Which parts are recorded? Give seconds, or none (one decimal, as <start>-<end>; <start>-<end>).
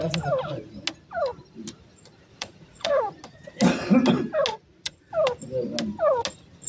0.0-2.3; 2.9-4.5; 5.1-6.7